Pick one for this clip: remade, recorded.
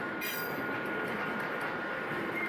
recorded